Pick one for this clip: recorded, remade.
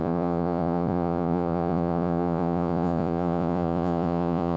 remade